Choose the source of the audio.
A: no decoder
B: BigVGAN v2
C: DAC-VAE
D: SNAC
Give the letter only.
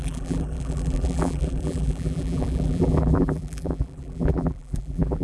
B